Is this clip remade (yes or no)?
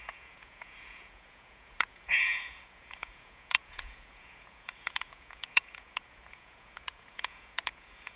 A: yes